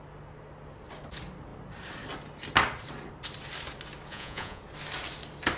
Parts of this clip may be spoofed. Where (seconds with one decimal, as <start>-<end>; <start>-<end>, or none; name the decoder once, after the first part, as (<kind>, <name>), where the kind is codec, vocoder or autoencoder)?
4.1-4.6 (vocoder, Vocos)